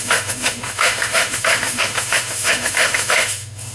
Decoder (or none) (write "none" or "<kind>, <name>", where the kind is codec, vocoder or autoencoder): autoencoder, DAC-VAE